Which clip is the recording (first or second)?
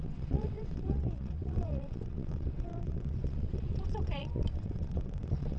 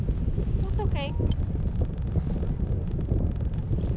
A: second